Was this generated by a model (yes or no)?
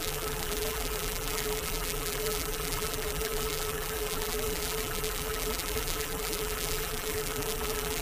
yes